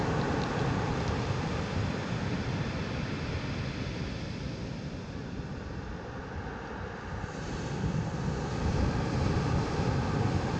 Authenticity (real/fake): real